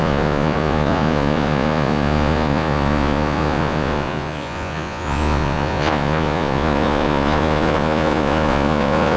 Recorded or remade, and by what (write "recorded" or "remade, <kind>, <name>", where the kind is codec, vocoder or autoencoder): remade, vocoder, Vocos